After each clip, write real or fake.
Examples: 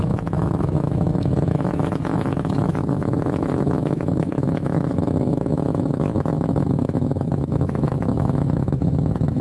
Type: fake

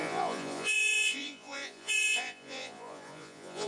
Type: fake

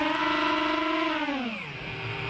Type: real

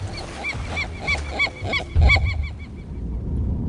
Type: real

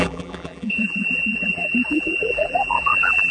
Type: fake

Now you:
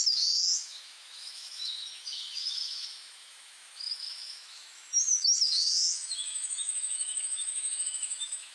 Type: fake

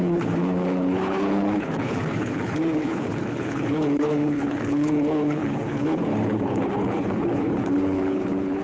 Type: fake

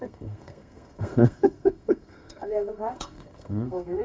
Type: fake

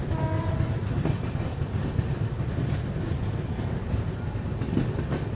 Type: real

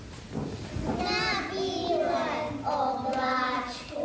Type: real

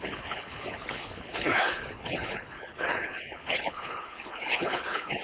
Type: fake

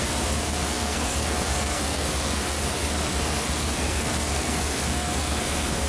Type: fake